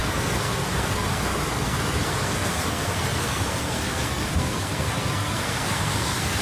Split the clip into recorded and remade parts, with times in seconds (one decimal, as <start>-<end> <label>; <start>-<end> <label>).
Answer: 0.0-6.4 remade